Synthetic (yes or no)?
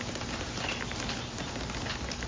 no